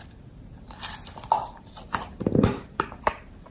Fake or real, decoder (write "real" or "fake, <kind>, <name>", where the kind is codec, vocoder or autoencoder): fake, vocoder, BigVGAN v2